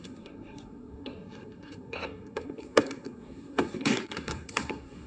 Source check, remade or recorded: remade